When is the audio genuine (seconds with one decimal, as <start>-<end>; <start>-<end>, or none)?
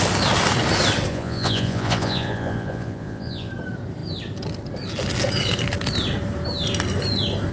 0.0-1.1; 3.5-7.5